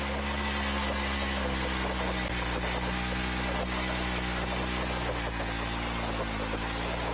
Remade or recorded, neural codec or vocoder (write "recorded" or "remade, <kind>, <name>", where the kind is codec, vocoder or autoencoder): recorded